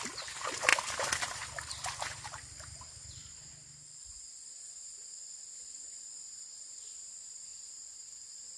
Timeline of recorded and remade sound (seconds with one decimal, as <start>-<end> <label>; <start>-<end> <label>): 0.0-7.5 recorded; 7.5-8.6 remade